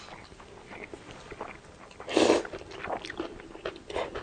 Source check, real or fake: real